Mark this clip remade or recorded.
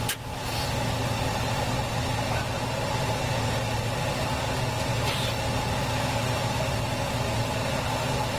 recorded